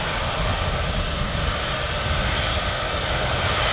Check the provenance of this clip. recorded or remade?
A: recorded